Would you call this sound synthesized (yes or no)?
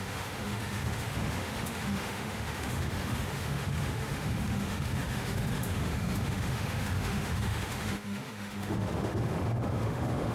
yes